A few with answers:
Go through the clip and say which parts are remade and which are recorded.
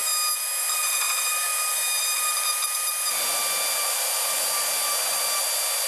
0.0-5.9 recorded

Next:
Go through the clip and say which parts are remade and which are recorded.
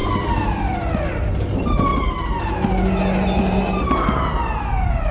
0.0-1.9 remade; 1.9-5.1 recorded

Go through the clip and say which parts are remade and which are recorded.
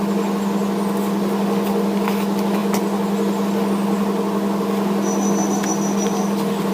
0.0-6.7 recorded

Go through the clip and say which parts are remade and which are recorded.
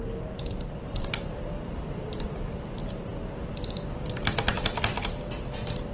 0.0-3.5 remade; 3.5-5.9 recorded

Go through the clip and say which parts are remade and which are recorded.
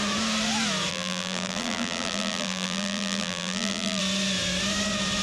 0.0-0.9 recorded; 0.9-4.0 remade; 4.0-5.2 recorded